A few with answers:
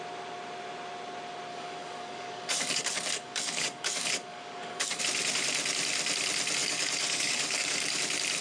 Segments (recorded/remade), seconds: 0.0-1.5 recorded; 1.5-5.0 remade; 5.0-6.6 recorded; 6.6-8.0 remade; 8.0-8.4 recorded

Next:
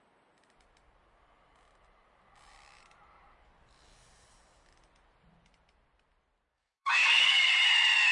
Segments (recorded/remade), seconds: 0.0-6.5 recorded; 6.5-7.5 remade; 7.5-8.1 recorded

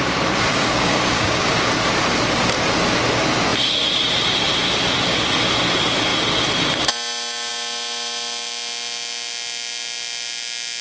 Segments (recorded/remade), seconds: 0.0-0.5 recorded; 0.5-1.7 remade; 1.7-10.8 recorded

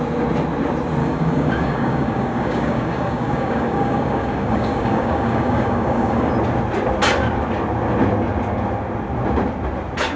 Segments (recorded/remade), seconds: 0.0-1.0 recorded; 1.0-6.3 remade; 6.3-10.2 recorded